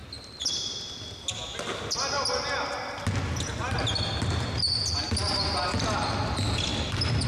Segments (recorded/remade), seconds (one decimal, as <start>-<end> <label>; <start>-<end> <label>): 0.0-7.3 recorded